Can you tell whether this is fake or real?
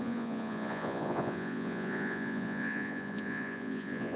fake